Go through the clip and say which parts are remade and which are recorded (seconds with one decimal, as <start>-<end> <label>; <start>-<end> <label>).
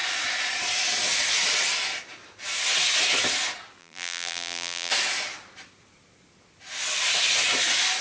0.0-3.8 recorded; 3.8-4.9 remade; 4.9-8.0 recorded